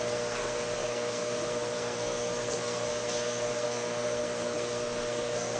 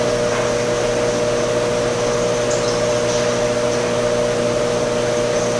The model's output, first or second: first